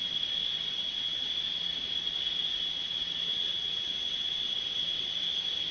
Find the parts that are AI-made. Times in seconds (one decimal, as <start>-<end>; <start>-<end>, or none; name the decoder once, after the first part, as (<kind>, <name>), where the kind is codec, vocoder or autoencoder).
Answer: 0.7-1.3 (vocoder, WaveNeXt); 3.3-5.1